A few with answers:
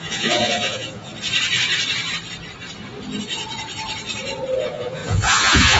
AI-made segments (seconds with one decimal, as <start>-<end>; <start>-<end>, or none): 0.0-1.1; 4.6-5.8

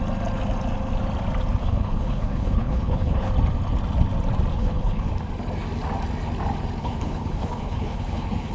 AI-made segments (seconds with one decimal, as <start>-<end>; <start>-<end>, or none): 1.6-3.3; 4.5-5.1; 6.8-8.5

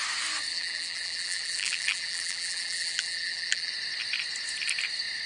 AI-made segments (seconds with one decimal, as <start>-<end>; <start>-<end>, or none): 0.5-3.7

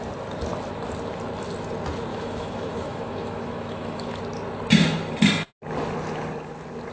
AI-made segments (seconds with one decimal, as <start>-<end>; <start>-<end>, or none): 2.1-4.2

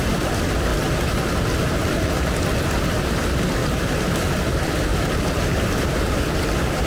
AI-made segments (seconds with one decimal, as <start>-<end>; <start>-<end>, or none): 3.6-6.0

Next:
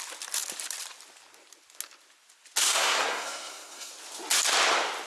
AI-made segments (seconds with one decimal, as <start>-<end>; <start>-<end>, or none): 2.6-3.9

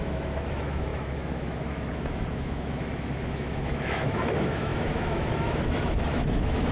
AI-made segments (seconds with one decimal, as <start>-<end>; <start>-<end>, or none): 0.0-6.7